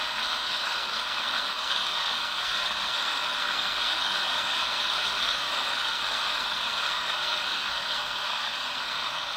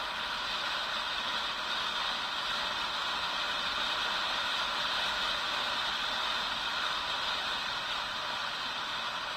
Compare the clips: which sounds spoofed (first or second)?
first